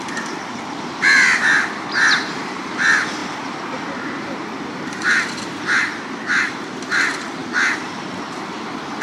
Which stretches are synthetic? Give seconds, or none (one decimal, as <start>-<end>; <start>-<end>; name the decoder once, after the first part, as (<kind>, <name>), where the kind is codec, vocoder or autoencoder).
0.0-7.4 (vocoder, BigVGAN v2); 8.4-9.0